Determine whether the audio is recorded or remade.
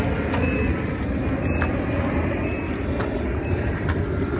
recorded